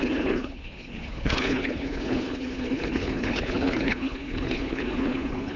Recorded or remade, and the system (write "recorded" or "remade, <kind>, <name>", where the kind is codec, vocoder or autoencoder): remade, codec, HILCodec